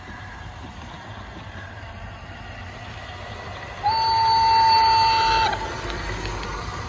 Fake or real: real